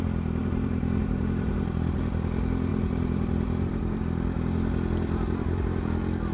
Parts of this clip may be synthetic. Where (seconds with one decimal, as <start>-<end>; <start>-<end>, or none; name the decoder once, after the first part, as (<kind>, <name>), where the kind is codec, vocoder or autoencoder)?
0.4-2.1 (vocoder, BigVGAN v2); 2.7-4.0